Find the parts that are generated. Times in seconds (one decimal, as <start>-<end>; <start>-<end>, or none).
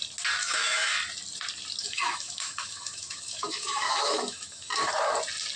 0.4-0.9; 1.8-4.8